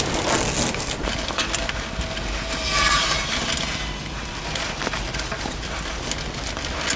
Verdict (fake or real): real